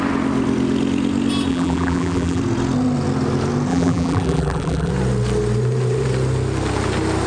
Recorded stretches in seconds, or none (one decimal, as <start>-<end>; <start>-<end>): 0.0-1.5; 2.4-3.7; 4.9-7.3